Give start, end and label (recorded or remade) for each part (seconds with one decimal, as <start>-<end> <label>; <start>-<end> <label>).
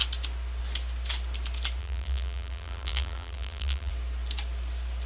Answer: 0.0-1.8 recorded; 1.8-3.9 remade; 3.9-5.1 recorded